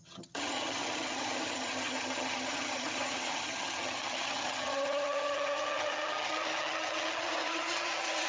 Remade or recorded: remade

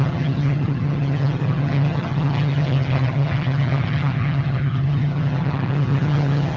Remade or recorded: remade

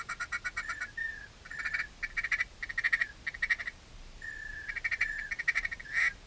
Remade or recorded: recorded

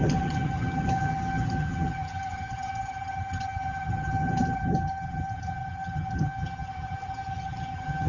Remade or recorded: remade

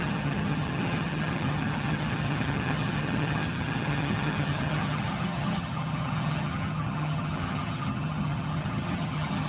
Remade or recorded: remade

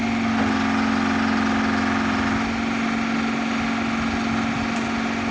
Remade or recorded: recorded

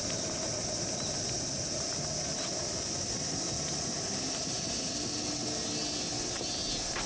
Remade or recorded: recorded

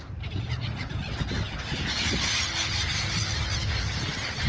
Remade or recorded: recorded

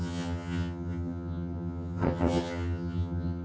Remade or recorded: remade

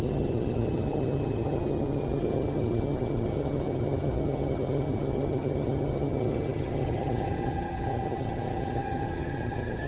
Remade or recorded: remade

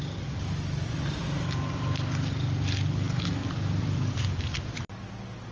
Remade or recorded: recorded